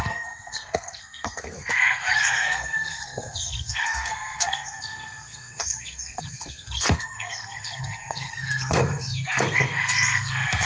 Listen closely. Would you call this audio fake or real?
fake